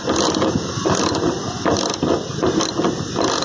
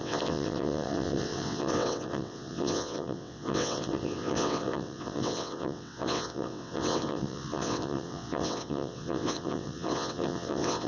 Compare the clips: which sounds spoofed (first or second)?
second